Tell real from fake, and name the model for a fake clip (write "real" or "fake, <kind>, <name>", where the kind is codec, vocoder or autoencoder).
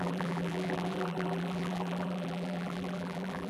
fake, vocoder, BigVGAN v2